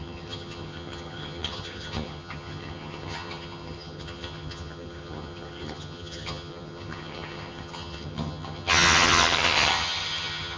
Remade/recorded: remade